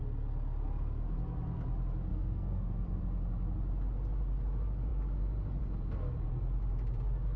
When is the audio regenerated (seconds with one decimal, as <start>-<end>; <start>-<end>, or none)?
2.1-3.0